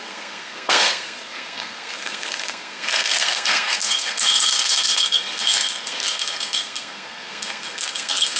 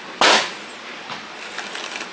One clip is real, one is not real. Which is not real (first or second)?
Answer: first